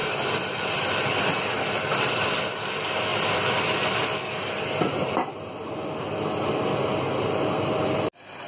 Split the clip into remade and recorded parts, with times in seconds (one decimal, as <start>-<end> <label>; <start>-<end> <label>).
0.0-8.5 recorded